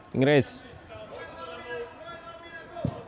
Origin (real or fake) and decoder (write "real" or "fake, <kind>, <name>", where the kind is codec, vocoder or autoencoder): real